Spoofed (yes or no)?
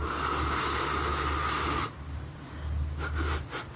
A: no